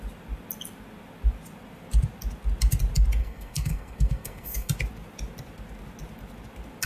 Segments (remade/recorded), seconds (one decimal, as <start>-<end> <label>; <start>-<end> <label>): 0.0-3.2 recorded; 3.2-4.7 remade; 4.7-6.9 recorded